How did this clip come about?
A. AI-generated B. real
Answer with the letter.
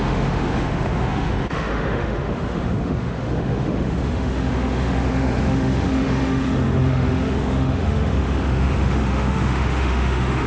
A